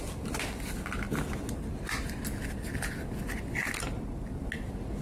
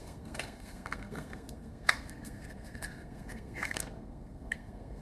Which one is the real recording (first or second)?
first